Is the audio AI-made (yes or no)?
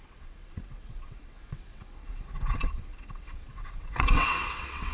yes